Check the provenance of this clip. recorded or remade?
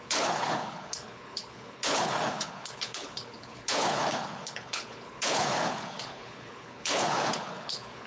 remade